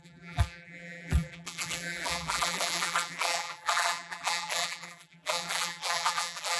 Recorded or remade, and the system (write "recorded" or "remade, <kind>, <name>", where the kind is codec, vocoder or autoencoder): remade, vocoder, BigVGAN v2